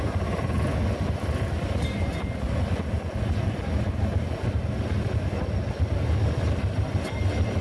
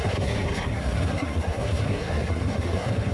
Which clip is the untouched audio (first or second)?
first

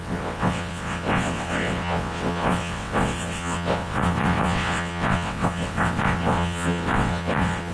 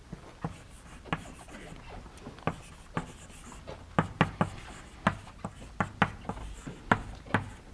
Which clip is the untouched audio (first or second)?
second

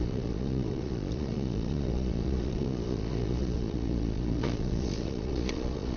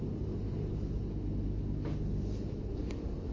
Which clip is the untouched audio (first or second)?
second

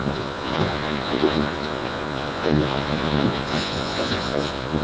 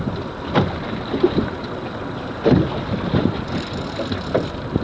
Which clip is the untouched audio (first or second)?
second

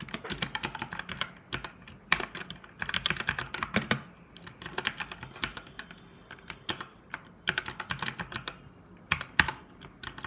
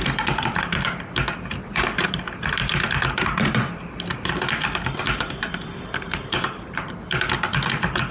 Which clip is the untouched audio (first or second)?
first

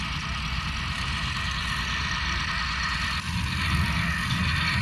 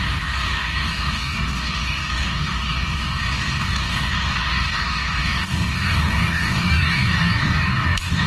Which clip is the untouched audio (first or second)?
first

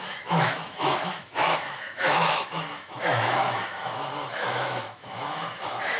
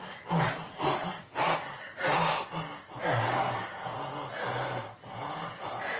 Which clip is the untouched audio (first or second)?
second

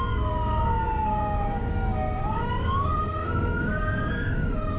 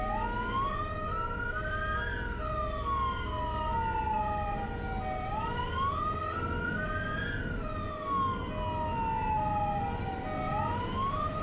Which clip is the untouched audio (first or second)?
second